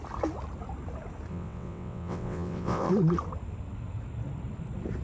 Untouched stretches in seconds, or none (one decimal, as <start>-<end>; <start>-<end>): 0.0-1.3; 2.9-5.0